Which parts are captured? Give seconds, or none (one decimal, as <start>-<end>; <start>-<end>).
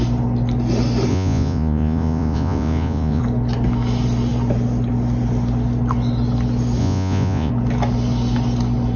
0.0-1.1; 3.2-6.8; 7.5-9.0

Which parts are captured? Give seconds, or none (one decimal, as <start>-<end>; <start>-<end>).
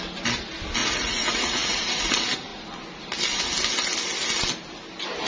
0.0-0.8; 2.1-5.3